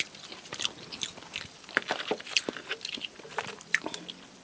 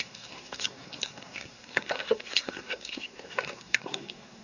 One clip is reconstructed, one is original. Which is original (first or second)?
first